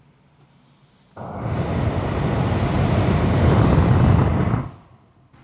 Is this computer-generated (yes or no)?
no